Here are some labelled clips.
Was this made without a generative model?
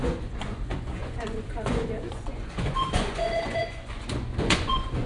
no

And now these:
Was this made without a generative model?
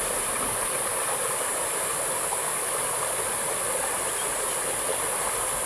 yes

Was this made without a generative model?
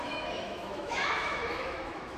no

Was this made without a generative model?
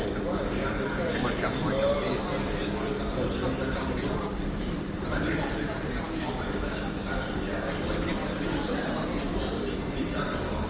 no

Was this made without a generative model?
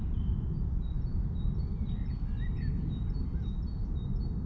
yes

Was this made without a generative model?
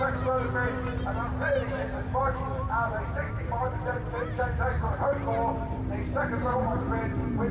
yes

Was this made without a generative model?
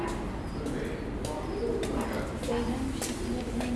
yes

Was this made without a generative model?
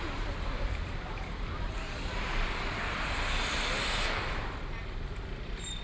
no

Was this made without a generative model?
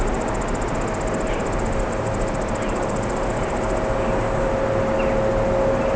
yes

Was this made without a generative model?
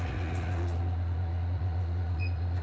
no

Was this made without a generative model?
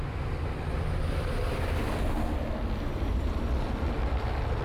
yes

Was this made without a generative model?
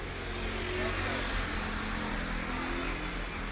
yes